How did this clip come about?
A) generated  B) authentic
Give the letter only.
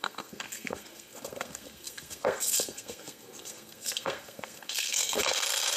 A